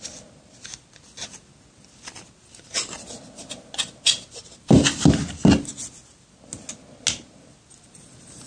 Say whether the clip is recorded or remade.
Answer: recorded